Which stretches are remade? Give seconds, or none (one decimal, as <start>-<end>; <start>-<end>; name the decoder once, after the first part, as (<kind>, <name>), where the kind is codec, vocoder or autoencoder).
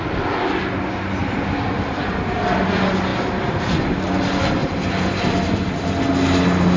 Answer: 1.2-2.1 (vocoder, BigVGAN v2); 4.6-5.3